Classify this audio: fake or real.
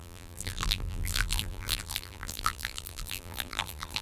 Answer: fake